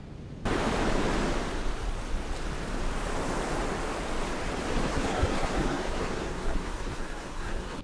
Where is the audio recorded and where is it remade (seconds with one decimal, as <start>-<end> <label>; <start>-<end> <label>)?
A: 0.0-4.9 recorded; 4.9-7.8 remade